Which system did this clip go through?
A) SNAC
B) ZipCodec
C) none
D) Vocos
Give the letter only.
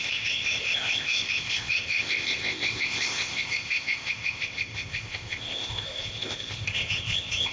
B